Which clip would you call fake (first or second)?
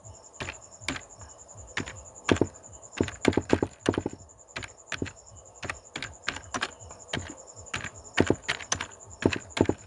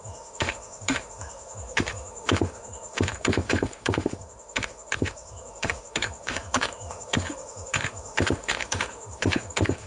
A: second